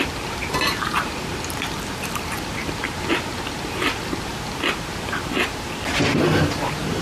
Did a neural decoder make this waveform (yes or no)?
no